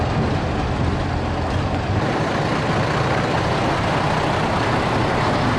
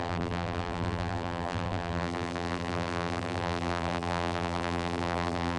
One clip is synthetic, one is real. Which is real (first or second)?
first